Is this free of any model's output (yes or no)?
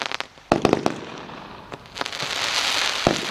yes